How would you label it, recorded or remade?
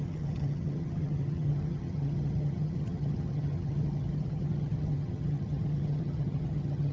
remade